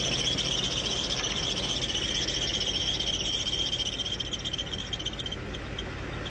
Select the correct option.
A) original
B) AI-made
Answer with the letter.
A